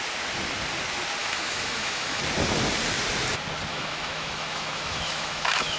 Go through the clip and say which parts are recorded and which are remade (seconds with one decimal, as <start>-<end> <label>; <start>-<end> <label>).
0.0-1.2 recorded; 1.2-2.2 remade; 2.2-3.7 recorded; 3.7-5.8 remade